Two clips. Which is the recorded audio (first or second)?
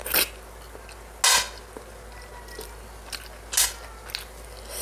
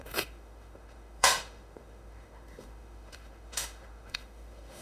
first